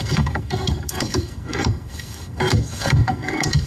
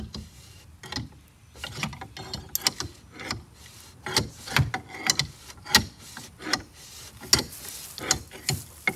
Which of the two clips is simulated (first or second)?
first